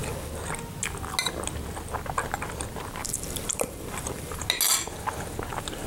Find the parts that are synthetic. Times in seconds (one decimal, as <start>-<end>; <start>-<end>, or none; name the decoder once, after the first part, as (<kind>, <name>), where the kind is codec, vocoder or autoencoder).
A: 3.0-4.5 (vocoder, BigVGAN v2)